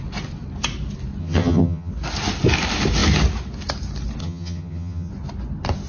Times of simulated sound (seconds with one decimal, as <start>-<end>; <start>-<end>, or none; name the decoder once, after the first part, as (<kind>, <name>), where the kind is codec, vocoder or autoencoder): 1.2-1.9 (vocoder, HiFi-GAN); 4.2-5.1